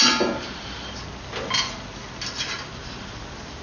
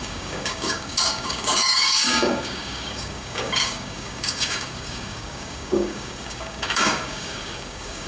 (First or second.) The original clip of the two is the first